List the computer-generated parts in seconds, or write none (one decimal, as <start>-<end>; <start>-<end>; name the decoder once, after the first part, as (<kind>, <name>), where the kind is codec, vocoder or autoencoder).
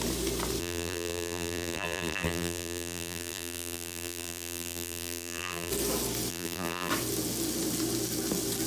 0.6-5.7 (vocoder, BigVGAN v2); 6.3-6.9